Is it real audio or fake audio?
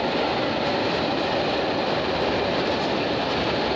real